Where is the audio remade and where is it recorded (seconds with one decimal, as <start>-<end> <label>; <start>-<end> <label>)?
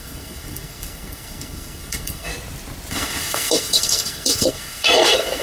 0.0-2.3 remade; 2.3-2.9 recorded; 2.9-5.4 remade